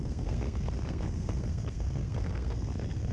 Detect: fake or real fake